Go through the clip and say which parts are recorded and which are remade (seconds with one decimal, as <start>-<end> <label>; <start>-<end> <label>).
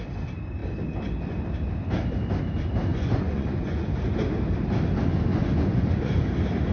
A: 0.0-2.9 recorded; 2.9-3.9 remade; 3.9-5.3 recorded; 5.3-6.2 remade; 6.2-6.7 recorded